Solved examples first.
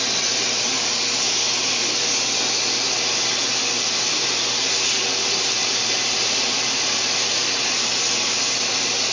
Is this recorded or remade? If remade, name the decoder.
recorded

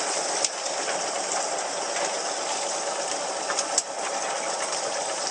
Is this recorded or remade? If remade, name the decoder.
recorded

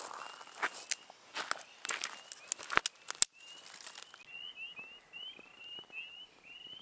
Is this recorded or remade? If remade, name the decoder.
recorded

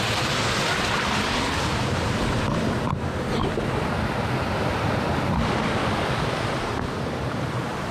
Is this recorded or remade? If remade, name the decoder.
recorded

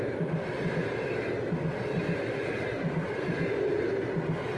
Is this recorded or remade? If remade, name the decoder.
recorded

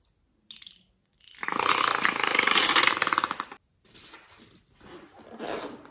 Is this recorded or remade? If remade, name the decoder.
recorded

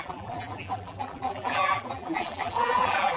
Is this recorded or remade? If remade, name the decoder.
remade, vocoder, BigVGAN v2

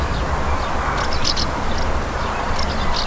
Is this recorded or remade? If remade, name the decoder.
recorded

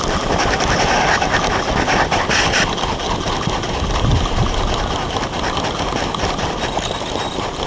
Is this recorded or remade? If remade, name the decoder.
recorded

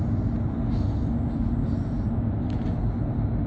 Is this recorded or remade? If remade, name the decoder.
recorded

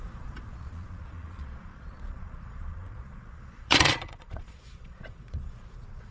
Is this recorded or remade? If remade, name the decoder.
remade, vocoder, Vocos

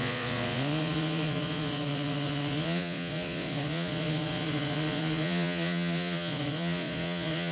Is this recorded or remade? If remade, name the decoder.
remade, vocoder, Vocos